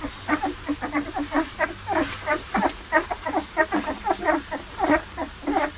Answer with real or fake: fake